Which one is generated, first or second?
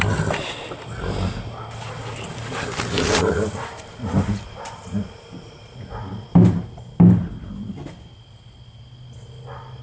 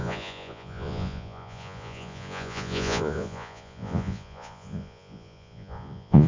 second